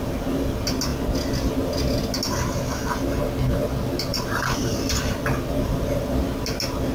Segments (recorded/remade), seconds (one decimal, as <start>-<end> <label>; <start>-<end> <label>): 0.0-4.1 recorded; 4.1-5.2 remade; 5.2-6.9 recorded